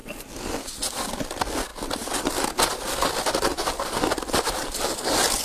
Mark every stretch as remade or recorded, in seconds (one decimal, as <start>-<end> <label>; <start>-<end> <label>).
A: 0.0-1.7 recorded; 1.7-2.3 remade; 2.3-3.5 recorded; 3.5-4.9 remade; 4.9-5.4 recorded